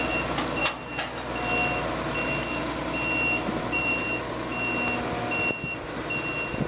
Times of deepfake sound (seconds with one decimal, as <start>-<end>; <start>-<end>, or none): none